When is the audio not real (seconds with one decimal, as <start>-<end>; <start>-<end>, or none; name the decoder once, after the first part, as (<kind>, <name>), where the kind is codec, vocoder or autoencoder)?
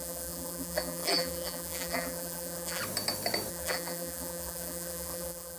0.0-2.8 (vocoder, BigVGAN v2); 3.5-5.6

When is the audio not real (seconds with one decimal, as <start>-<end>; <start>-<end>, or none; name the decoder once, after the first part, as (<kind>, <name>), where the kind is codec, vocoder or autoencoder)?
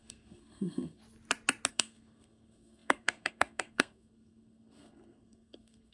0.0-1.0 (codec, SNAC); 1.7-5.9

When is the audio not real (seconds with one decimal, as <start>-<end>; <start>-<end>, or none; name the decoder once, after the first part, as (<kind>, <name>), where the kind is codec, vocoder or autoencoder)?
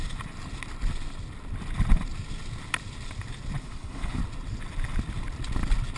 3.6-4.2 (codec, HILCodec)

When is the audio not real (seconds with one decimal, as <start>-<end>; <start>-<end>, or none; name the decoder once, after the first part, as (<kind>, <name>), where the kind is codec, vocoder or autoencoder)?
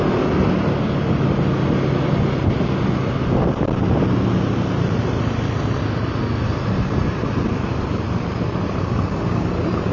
none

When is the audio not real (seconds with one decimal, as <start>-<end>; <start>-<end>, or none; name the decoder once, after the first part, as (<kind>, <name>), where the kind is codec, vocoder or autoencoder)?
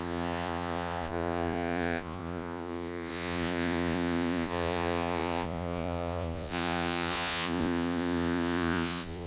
0.0-9.3 (vocoder, Vocos)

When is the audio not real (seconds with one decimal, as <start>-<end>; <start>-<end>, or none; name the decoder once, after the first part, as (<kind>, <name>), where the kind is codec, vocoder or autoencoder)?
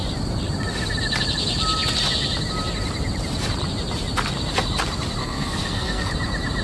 5.2-6.1 (codec, SNAC)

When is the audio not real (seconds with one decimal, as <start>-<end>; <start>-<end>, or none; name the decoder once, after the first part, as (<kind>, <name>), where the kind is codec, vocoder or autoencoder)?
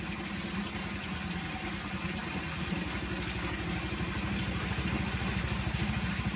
none